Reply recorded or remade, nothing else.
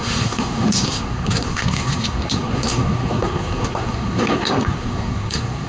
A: remade